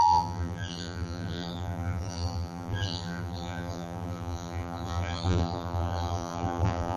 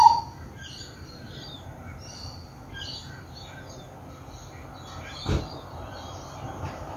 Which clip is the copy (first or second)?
first